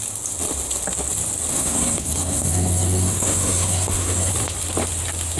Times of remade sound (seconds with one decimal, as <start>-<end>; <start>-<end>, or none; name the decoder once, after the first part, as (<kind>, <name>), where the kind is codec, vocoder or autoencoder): 1.5-4.3 (codec, SNAC)

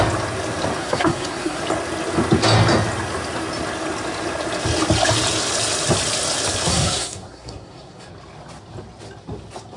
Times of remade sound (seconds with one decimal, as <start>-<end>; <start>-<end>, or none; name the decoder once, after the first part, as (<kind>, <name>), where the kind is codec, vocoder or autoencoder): 0.8-1.6 (codec, SNAC); 6.7-8.1

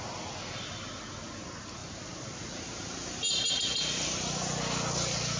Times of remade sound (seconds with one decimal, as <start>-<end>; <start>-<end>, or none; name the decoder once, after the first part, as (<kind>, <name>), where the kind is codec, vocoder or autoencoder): 1.8-3.5 (vocoder, BigVGAN v2)

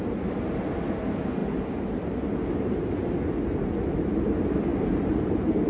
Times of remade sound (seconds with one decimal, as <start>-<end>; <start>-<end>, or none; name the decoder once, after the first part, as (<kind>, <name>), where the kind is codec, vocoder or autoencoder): 4.7-5.7 (vocoder, BigVGAN v2)

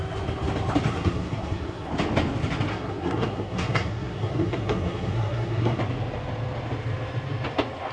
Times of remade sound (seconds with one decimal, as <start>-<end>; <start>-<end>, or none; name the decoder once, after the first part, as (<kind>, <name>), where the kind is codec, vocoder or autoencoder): 0.9-1.9 (codec, SNAC); 2.7-5.8

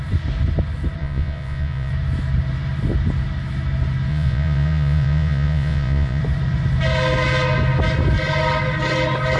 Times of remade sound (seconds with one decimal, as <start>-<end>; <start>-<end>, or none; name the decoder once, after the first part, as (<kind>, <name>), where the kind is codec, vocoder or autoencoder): 1.0-1.9 (vocoder, Vocos); 4.1-6.2

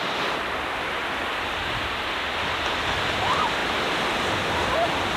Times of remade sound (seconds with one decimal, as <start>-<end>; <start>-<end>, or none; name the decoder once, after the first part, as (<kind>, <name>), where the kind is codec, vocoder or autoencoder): none

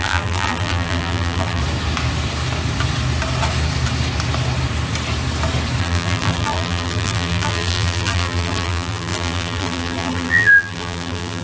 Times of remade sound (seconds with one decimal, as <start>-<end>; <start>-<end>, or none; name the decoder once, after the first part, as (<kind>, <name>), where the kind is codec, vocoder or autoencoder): 0.0-1.6 (vocoder, BigVGAN v2); 5.8-11.4